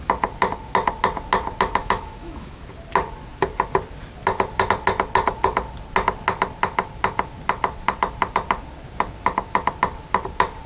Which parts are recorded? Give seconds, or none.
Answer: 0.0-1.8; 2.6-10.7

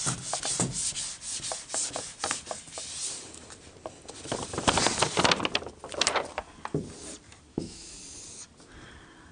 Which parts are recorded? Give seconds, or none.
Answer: 0.0-7.5; 8.0-9.3

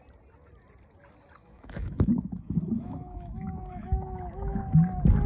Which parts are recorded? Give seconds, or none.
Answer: 0.0-1.4; 4.6-5.3

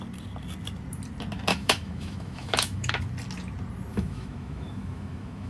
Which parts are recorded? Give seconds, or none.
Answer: 0.0-1.5; 2.9-3.9

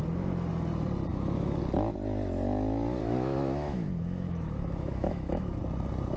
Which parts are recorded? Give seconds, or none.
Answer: 0.0-1.1; 1.6-3.0; 5.6-6.2

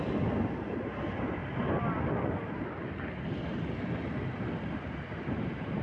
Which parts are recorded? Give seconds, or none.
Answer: 0.0-5.8

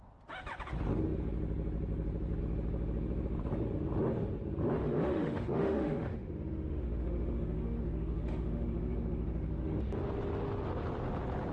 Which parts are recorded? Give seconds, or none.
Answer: 0.0-4.8; 9.8-11.5

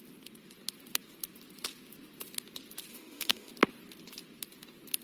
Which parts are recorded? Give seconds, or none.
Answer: 0.0-2.9; 3.5-5.0